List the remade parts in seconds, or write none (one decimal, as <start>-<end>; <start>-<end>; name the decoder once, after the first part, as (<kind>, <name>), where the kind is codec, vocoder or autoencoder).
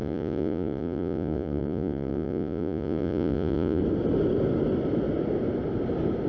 0.0-3.8 (vocoder, Vocos)